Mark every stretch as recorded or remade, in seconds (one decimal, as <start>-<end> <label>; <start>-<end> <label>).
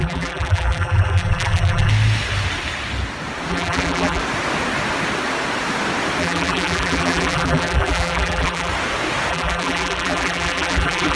0.0-1.9 remade; 1.9-3.5 recorded; 3.5-4.2 remade; 4.2-6.2 recorded; 6.2-8.7 remade; 8.7-9.3 recorded; 9.3-11.2 remade